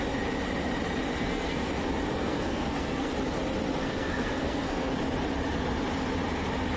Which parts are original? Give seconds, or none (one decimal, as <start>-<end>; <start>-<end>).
0.0-1.2; 1.7-2.2; 3.1-3.8; 4.9-6.8